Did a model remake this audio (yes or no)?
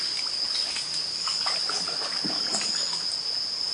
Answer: no